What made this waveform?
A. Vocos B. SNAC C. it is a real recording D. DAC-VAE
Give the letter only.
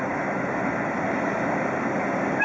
C